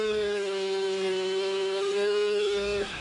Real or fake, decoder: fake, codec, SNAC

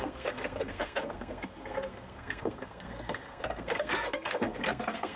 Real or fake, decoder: fake, codec, SNAC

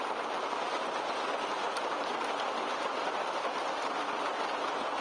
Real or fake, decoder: real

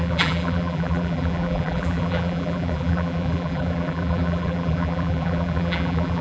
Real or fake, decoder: fake, vocoder, BigVGAN v2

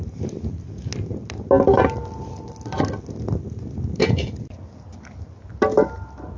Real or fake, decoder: real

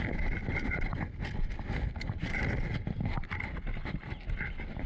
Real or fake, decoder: real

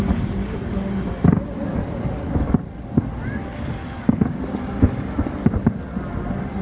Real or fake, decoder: real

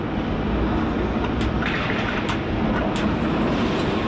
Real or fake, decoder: real